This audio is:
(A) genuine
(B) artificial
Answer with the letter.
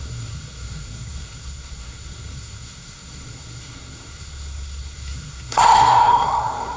B